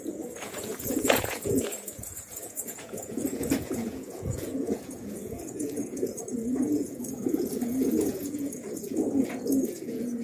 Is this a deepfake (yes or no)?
yes